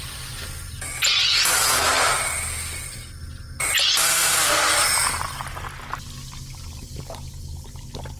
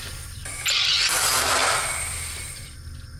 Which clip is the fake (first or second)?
second